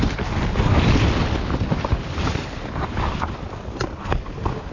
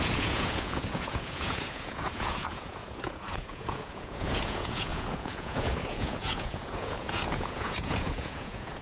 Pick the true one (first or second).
first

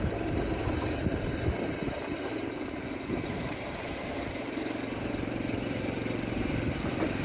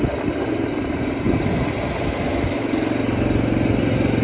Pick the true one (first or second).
second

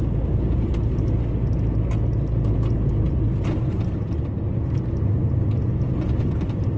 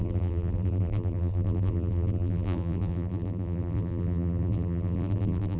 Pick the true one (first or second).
first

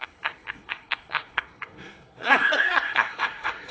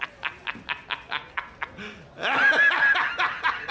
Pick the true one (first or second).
second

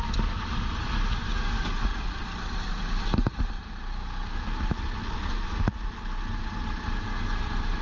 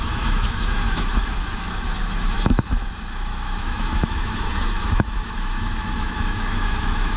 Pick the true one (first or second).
first